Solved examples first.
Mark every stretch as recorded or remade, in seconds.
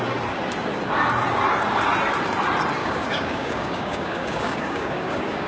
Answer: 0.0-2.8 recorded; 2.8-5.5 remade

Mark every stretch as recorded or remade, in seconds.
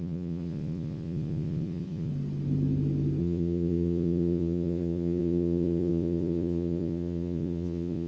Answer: 0.0-2.1 remade; 2.1-3.2 recorded; 3.2-8.1 remade